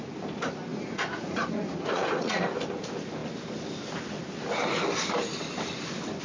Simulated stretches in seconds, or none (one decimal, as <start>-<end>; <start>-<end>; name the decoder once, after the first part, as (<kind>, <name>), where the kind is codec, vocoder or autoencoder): 0.7-2.4 (vocoder, Vocos)